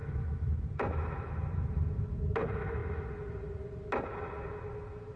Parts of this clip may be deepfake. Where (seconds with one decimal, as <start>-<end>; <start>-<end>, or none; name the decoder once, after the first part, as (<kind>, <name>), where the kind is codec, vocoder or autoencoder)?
0.0-2.2 (autoencoder, DAC-VAE)